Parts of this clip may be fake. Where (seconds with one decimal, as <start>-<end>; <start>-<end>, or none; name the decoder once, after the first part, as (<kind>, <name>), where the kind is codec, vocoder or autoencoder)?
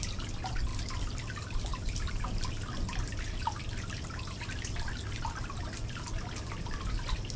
none